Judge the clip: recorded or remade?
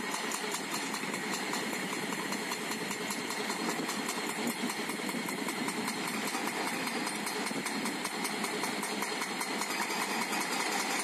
recorded